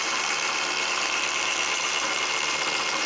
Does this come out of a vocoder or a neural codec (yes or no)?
yes